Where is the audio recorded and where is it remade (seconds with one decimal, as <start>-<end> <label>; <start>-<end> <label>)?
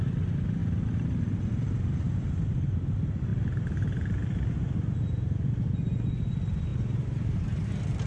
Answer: 0.0-6.7 recorded; 6.7-8.1 remade